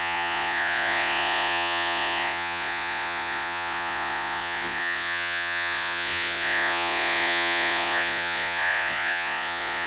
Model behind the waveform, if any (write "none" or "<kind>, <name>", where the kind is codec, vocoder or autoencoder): vocoder, Vocos